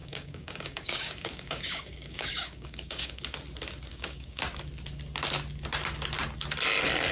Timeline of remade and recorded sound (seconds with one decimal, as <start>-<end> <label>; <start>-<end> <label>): 0.0-3.2 remade; 3.2-3.9 recorded; 3.9-4.4 remade; 4.4-7.1 recorded